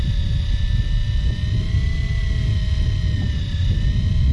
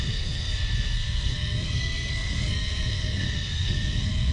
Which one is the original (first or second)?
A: first